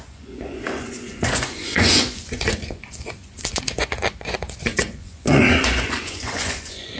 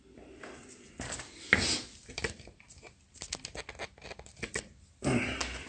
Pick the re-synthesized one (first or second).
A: first